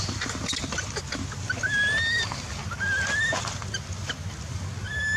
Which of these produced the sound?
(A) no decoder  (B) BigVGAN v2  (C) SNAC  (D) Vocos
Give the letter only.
A